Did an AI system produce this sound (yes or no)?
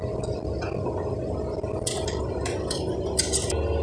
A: no